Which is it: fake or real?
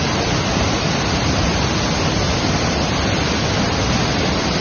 real